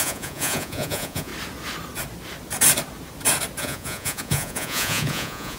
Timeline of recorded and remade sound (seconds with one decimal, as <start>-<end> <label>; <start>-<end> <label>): 0.0-1.3 remade; 1.3-3.6 recorded; 3.6-5.6 remade